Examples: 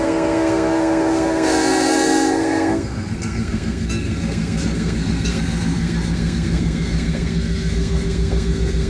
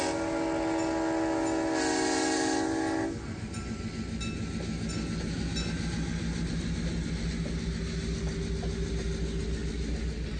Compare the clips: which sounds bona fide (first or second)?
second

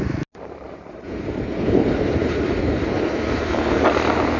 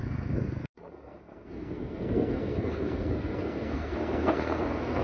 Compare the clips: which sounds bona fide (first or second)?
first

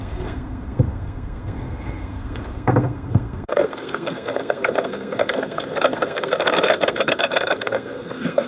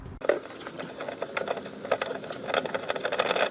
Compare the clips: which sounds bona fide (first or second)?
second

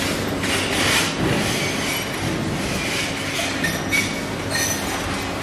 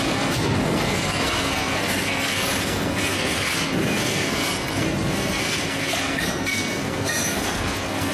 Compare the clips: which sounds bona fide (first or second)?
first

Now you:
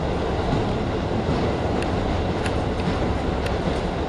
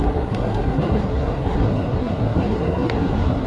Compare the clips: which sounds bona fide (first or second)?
first